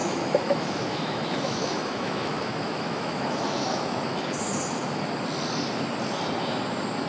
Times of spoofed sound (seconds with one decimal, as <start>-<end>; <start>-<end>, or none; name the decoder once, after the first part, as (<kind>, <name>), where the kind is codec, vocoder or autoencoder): 0.0-4.3 (autoencoder, DAC-VAE)